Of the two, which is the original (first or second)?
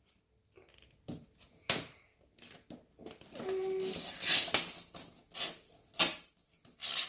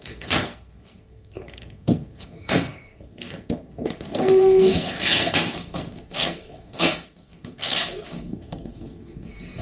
first